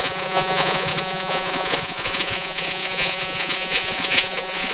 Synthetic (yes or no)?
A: yes